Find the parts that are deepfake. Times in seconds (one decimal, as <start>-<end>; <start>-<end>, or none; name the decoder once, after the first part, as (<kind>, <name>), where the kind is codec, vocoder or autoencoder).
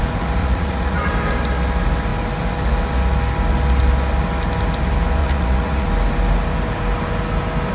0.4-1.1 (vocoder, Vocos); 5.2-5.9